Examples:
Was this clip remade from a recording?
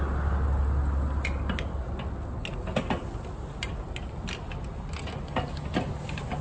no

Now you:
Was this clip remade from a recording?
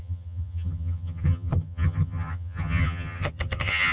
yes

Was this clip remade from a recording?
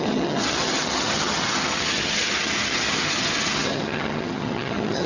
yes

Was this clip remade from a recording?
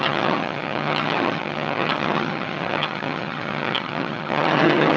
yes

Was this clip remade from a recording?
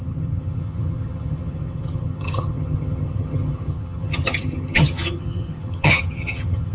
yes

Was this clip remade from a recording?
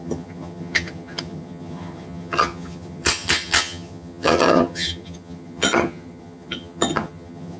yes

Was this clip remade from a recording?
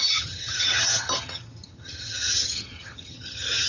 yes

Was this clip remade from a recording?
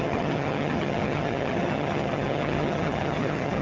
yes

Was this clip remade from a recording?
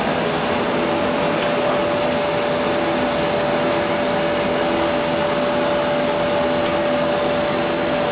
no